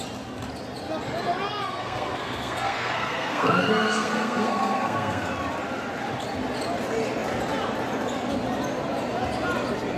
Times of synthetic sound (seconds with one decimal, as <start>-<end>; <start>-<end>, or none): 1.5-5.3